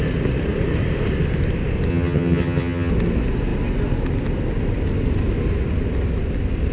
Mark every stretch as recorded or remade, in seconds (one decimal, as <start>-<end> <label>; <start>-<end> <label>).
0.0-1.9 recorded; 1.9-2.9 remade; 2.9-6.7 recorded